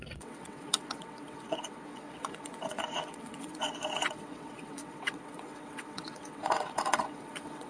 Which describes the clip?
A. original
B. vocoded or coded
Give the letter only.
B